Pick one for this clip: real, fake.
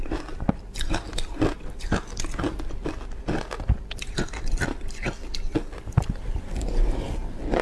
real